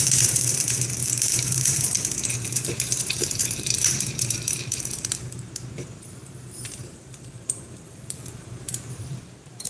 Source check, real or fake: fake